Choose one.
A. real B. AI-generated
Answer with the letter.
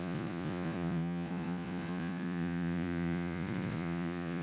B